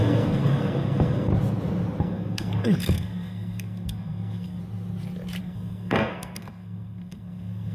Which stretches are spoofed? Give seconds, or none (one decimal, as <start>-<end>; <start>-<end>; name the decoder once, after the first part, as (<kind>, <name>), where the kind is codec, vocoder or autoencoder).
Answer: 0.0-1.3 (codec, SNAC); 2.0-4.6; 5.4-7.7